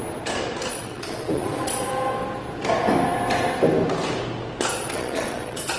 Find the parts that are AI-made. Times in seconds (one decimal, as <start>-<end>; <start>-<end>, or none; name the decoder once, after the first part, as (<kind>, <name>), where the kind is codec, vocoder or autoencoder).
0.7-1.9 (vocoder, Vocos); 4.7-5.8